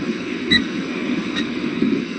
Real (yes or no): no